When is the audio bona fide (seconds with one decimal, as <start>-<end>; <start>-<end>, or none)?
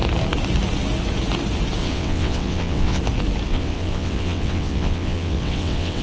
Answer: 0.0-1.8; 3.0-3.5